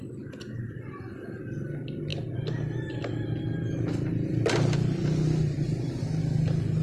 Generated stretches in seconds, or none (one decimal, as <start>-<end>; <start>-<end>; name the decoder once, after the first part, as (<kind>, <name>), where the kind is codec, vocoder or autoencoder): none